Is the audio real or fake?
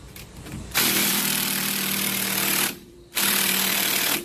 fake